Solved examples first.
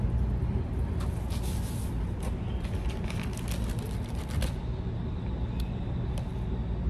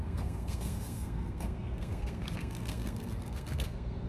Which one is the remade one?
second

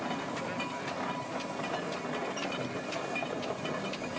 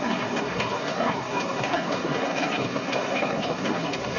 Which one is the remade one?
second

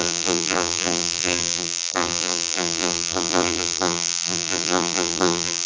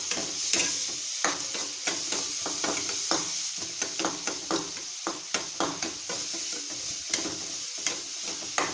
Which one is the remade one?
first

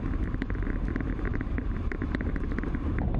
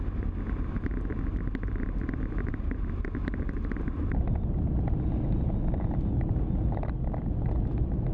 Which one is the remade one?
first